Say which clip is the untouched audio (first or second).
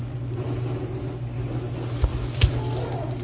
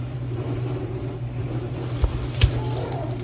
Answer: first